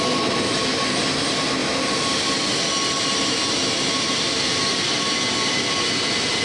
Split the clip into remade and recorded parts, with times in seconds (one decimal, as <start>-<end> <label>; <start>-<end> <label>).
0.0-6.4 recorded